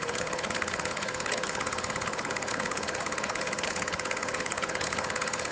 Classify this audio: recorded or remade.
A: remade